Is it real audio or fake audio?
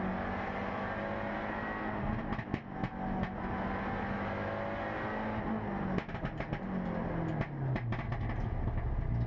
real